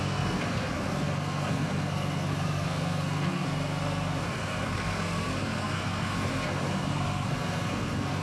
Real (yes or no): no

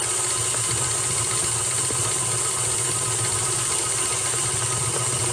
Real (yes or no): yes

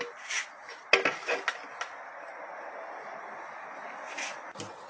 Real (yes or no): yes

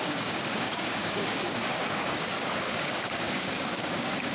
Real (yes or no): no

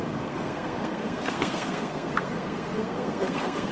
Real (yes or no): no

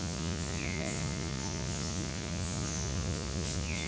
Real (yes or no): no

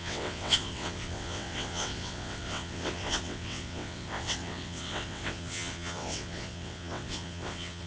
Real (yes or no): no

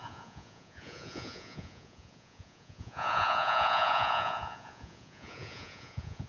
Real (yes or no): no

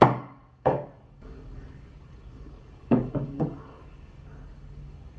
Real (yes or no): no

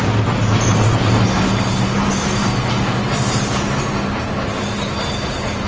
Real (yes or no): yes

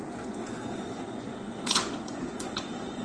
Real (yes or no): no